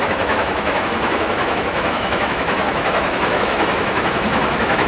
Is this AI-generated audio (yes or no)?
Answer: yes